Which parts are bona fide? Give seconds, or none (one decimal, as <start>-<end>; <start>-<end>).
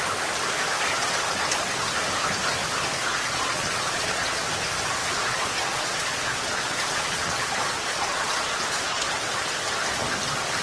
0.0-3.1; 4.4-5.0; 9.1-10.6